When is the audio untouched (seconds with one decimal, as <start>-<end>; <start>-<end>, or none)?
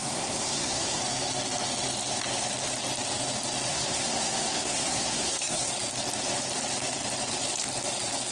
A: 1.0-3.7; 5.7-8.3